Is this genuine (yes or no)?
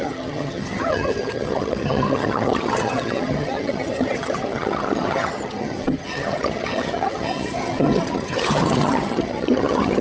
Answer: no